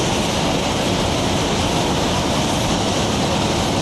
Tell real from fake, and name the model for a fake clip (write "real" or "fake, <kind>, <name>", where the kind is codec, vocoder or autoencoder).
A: real